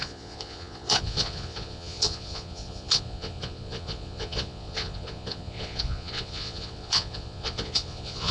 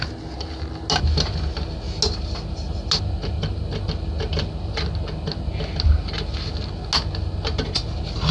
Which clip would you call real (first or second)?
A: second